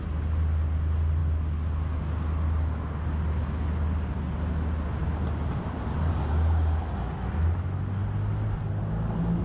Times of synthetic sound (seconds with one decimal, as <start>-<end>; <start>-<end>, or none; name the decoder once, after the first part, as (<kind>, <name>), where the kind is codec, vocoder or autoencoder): none